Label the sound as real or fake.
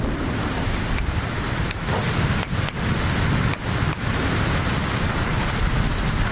real